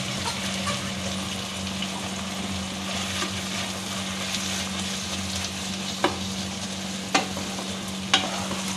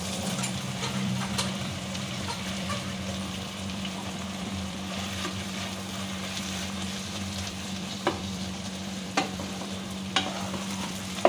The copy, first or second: second